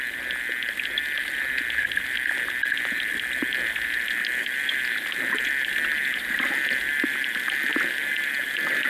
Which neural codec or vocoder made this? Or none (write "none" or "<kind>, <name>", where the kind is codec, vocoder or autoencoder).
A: none